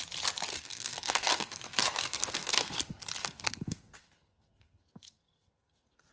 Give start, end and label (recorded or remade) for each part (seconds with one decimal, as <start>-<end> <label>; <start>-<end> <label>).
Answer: 0.0-0.5 recorded; 0.5-2.8 remade; 2.8-3.2 recorded; 3.2-6.1 remade